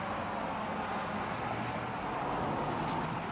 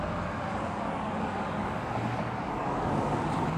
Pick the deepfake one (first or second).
second